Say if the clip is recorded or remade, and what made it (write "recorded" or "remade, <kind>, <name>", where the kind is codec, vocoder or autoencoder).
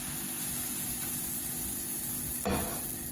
recorded